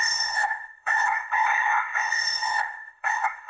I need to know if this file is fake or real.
fake